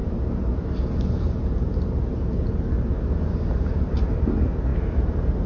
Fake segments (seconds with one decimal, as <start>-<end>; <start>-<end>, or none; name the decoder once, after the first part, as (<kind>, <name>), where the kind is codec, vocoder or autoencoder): none